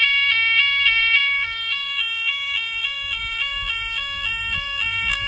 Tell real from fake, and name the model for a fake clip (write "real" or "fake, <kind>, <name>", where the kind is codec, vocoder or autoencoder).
fake, vocoder, BigVGAN v2